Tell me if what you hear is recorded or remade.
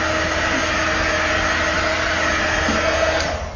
recorded